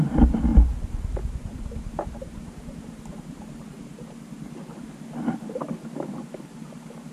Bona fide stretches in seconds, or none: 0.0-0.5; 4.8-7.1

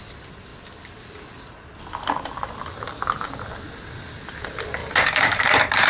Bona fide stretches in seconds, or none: 0.0-4.8

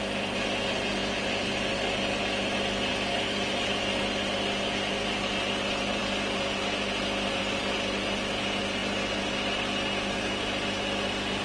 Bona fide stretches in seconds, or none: 0.0-11.4

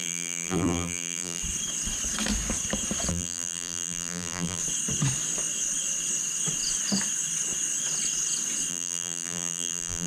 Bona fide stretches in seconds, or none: 1.4-3.1; 4.6-8.7

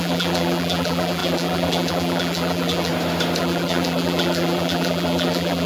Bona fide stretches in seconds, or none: 2.9-3.4

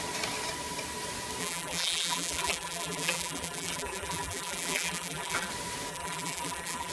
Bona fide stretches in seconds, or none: 0.0-1.4; 5.5-5.9

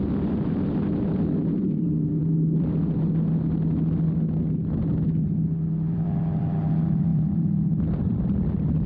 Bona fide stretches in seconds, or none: 2.2-5.9